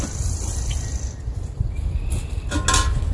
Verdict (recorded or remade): recorded